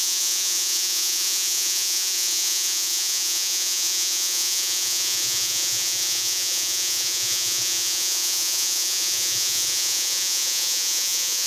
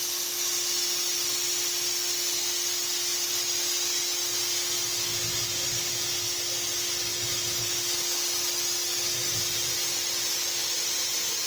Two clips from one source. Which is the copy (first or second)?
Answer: first